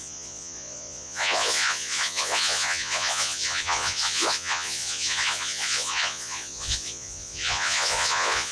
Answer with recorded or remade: remade